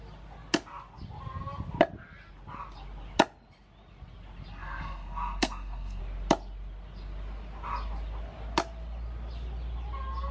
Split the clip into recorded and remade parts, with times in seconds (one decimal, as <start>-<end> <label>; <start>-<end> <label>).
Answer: 0.0-4.5 recorded; 4.5-6.0 remade; 6.0-10.3 recorded